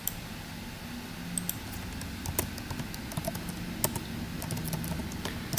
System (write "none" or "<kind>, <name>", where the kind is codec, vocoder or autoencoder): none